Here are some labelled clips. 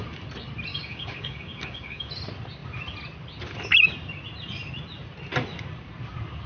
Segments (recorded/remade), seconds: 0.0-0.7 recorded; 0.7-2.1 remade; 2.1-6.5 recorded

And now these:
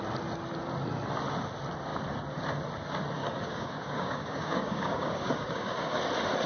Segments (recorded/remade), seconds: 0.0-3.2 recorded; 3.2-6.0 remade; 6.0-6.5 recorded

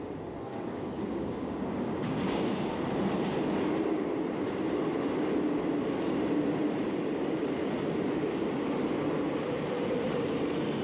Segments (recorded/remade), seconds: 0.0-0.5 recorded; 0.5-2.8 remade; 2.8-10.8 recorded

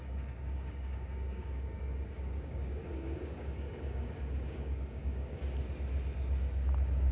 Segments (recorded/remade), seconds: 0.0-5.4 remade; 5.4-7.1 recorded

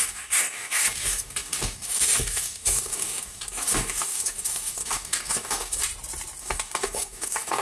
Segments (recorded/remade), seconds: 0.0-5.8 remade; 5.8-6.4 recorded; 6.4-7.6 remade